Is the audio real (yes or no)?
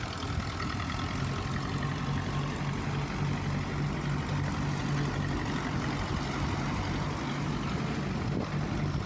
yes